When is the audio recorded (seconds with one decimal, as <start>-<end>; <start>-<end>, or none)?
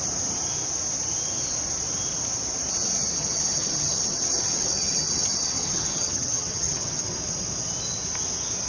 0.0-3.2; 7.0-8.7